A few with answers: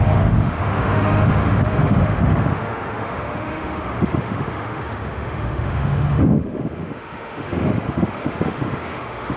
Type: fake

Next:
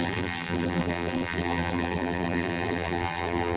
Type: fake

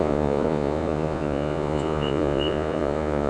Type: fake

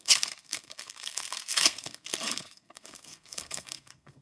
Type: fake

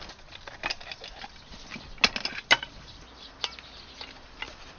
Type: real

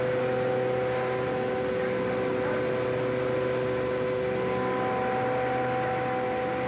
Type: real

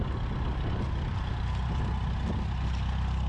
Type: real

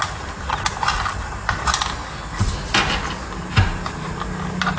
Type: real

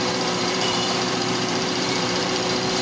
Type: fake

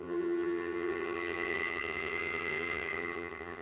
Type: fake